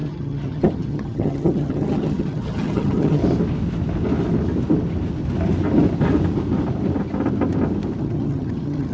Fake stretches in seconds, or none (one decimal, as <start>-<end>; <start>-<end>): 0.0-3.2; 8.0-8.9